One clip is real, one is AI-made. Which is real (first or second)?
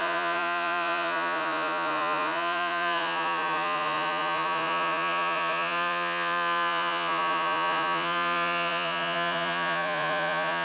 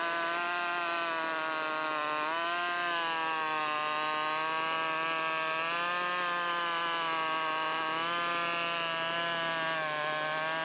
second